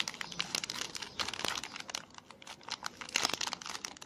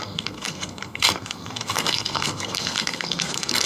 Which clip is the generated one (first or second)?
second